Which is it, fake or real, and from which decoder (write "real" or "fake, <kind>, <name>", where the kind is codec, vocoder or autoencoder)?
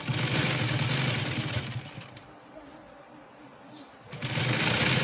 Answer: real